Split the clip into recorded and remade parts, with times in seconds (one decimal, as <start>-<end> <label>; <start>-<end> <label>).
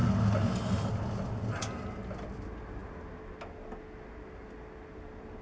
0.0-5.4 recorded